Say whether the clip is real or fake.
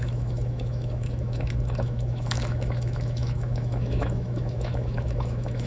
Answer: fake